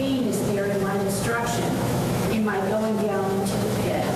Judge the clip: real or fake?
fake